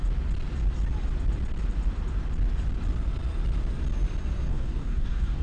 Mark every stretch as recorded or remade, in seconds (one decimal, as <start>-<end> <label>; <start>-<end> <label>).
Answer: 0.0-4.5 recorded; 4.5-5.4 remade